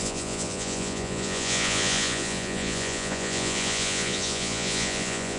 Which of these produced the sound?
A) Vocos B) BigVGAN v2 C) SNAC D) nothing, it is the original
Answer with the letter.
A